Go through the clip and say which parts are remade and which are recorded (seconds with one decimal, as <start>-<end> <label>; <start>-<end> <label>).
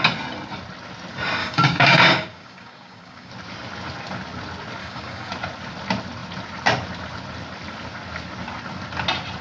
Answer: 0.0-1.4 recorded; 1.4-3.3 remade; 3.3-4.8 recorded; 4.8-5.3 remade; 5.3-9.4 recorded